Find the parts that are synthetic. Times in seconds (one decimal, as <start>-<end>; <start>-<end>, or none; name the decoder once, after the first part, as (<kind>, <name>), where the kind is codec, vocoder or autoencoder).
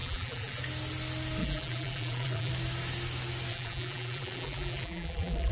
0.0-0.6 (vocoder, BigVGAN v2); 1.4-2.5; 3.5-5.5